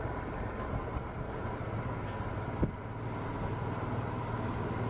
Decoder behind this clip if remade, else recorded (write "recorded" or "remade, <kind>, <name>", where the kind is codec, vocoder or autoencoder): recorded